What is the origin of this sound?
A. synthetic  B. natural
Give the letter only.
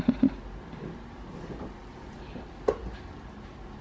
B